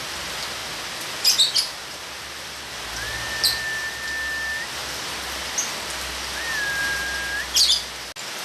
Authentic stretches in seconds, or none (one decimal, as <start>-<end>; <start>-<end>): 0.0-8.4